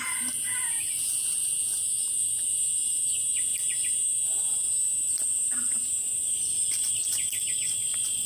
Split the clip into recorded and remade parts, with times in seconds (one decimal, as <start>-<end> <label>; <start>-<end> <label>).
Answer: 0.0-8.3 remade